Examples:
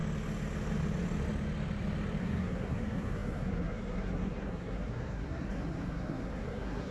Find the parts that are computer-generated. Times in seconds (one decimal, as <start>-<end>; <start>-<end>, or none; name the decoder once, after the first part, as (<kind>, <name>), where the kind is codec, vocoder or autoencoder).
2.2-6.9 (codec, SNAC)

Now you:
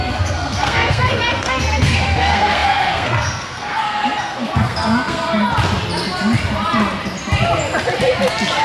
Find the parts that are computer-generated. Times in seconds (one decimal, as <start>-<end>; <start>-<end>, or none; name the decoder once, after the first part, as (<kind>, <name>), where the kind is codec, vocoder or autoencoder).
0.0-5.4 (codec, SNAC)

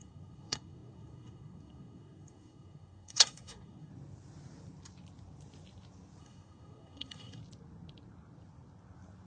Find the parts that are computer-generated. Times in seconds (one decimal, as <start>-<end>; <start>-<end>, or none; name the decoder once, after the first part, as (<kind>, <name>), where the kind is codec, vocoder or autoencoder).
0.0-3.9 (codec, SNAC); 6.2-7.4